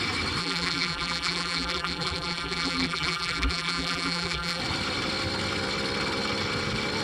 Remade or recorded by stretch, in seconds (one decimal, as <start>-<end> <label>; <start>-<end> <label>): 0.0-0.4 recorded; 0.4-4.6 remade; 4.6-7.0 recorded